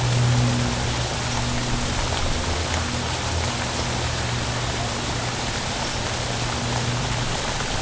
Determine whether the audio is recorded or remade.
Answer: recorded